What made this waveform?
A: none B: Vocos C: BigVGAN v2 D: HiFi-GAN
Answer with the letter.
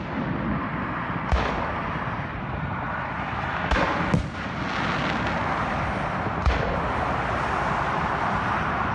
A